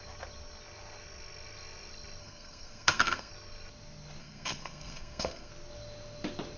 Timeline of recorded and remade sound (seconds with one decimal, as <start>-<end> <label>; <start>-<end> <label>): 0.0-2.2 recorded; 2.2-3.3 remade; 3.3-4.2 recorded; 4.2-5.5 remade; 5.5-6.6 recorded